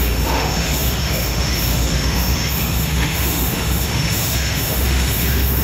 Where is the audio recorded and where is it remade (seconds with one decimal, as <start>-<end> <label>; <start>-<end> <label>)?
0.0-5.6 remade